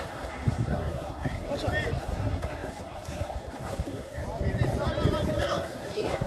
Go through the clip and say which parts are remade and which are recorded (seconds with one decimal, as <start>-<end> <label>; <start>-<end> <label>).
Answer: 0.0-1.5 remade; 1.5-2.0 recorded; 2.0-4.2 remade; 4.2-5.4 recorded; 5.4-6.3 remade